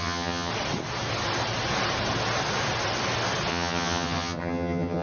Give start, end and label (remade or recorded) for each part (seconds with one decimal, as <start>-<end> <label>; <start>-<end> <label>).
0.0-0.5 remade; 0.5-3.5 recorded; 3.5-5.0 remade